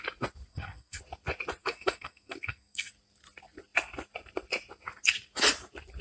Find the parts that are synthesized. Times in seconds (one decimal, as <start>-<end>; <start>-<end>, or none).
0.5-1.0; 1.6-2.9